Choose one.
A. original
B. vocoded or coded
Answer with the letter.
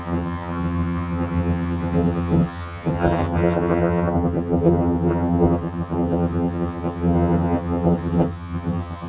B